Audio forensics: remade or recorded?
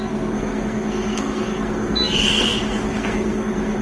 remade